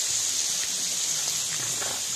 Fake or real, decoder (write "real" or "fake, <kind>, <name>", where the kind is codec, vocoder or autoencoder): real